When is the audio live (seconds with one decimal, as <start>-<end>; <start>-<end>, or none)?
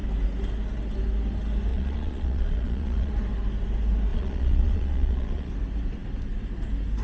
0.0-1.7; 3.1-4.1; 5.5-7.0